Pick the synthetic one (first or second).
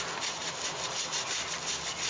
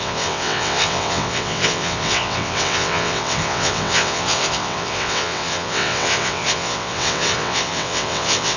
second